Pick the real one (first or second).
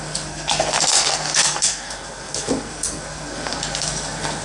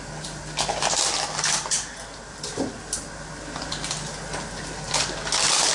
second